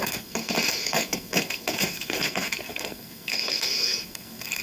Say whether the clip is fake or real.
fake